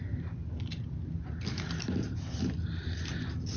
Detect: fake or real real